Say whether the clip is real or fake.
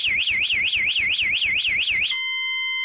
real